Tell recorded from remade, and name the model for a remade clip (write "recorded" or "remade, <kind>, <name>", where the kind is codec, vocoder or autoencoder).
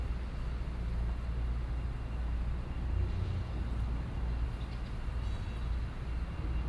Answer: recorded